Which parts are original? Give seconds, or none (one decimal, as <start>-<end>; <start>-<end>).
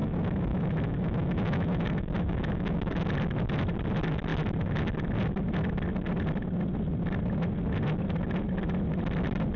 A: 2.9-9.6